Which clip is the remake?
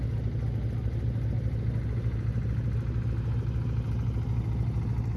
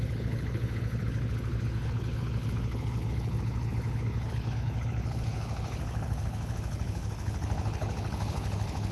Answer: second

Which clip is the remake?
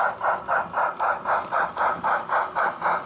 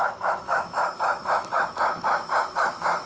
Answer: second